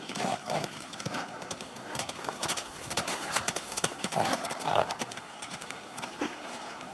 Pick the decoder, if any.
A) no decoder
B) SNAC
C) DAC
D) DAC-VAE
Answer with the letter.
B